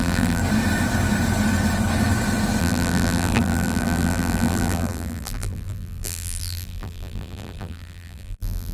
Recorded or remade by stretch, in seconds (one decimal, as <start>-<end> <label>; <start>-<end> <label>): 0.0-0.4 remade; 0.4-2.6 recorded; 2.6-8.7 remade